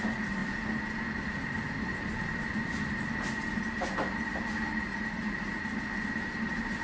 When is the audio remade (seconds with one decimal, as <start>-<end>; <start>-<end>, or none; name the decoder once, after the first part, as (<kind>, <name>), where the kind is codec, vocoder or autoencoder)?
4.9-5.6 (vocoder, Vocos)